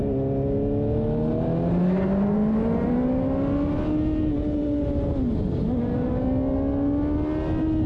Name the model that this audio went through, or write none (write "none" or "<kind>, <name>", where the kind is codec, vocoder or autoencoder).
none